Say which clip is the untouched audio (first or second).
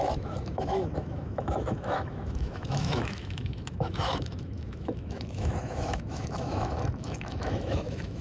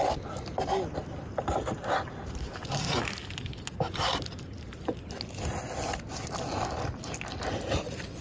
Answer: second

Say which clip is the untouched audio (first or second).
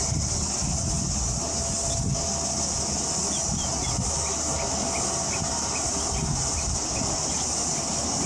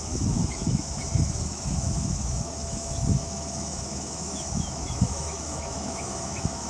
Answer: first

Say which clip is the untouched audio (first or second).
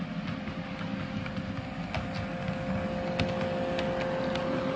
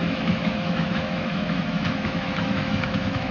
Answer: first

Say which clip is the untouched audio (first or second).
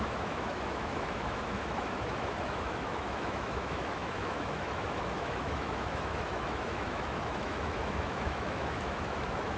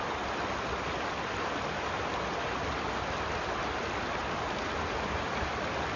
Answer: second